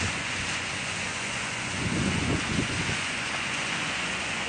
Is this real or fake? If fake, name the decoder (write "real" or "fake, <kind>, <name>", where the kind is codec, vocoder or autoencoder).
fake, vocoder, Vocos